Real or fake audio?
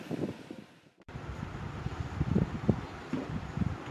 fake